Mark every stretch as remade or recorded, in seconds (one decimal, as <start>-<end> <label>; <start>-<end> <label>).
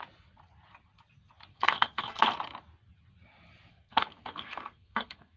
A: 0.0-1.5 recorded; 1.5-2.2 remade; 2.2-3.7 recorded; 3.7-5.4 remade